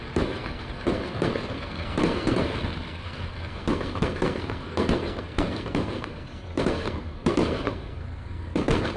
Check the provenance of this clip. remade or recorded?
remade